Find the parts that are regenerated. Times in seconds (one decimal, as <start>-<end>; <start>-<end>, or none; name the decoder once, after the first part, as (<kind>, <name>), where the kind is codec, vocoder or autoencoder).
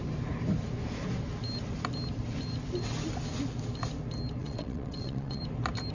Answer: 4.4-5.4 (vocoder, WaveNeXt)